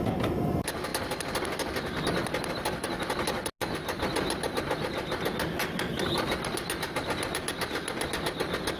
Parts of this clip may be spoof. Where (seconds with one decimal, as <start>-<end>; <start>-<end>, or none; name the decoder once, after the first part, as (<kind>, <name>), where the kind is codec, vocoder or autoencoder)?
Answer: none

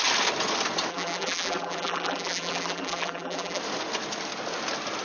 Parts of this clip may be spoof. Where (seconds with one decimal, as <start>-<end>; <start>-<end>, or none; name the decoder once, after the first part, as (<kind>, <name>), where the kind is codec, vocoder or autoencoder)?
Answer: 0.9-3.6 (vocoder, BigVGAN v2)